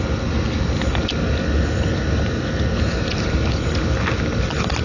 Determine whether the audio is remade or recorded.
recorded